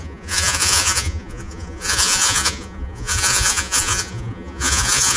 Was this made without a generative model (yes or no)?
no